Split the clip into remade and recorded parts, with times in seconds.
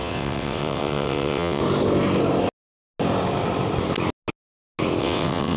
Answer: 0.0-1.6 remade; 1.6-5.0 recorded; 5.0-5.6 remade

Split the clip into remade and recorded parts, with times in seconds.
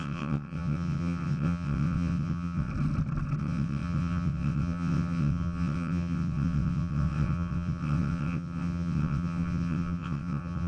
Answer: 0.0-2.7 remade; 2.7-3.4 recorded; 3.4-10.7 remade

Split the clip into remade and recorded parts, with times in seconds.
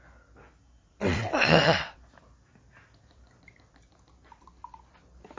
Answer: 0.0-1.1 recorded; 1.1-2.0 remade; 2.0-5.4 recorded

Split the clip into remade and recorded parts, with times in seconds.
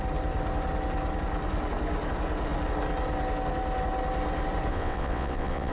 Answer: 0.0-4.7 recorded; 4.7-5.7 remade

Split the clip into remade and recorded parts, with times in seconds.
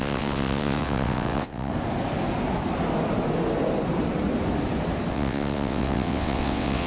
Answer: 0.0-1.7 remade; 1.7-5.1 recorded; 5.1-6.9 remade